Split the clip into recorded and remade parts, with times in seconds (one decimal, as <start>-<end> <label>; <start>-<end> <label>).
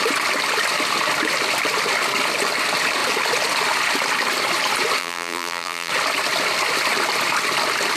0.0-5.0 recorded; 5.0-5.9 remade; 5.9-8.0 recorded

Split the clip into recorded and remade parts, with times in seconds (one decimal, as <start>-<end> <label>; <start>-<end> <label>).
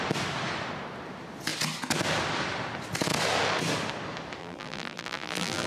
0.0-4.4 recorded; 4.4-5.7 remade